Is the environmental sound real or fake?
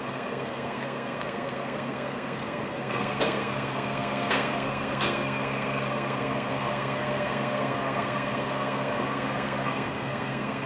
fake